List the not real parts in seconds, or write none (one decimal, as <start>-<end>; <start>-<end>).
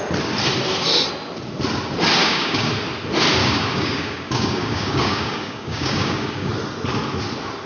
2.2-2.7; 3.4-6.5